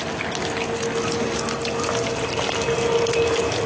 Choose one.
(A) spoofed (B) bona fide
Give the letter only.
B